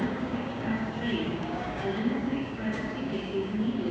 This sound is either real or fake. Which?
fake